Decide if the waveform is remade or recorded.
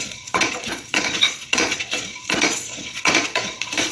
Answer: remade